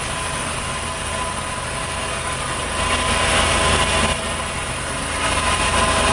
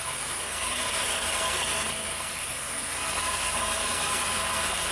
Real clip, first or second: first